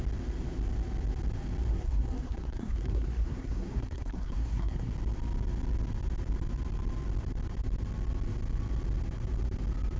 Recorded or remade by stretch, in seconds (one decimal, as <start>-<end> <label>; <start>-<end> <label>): 0.0-1.7 recorded; 1.7-4.9 remade; 4.9-10.0 recorded